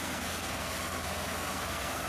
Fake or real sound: fake